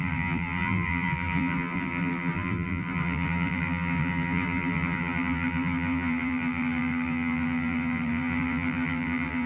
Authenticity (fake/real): fake